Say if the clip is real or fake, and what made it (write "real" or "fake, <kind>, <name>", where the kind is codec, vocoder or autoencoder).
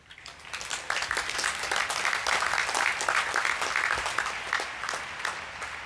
real